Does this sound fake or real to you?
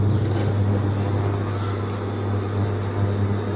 real